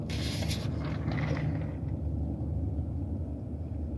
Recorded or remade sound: recorded